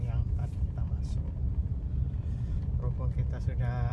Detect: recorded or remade remade